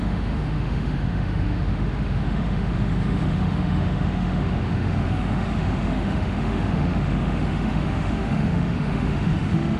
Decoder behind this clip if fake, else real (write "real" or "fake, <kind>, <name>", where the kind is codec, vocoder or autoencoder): fake, autoencoder, DAC-VAE